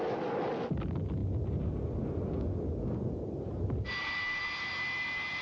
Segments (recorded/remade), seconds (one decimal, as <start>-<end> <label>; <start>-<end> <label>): 0.0-5.4 recorded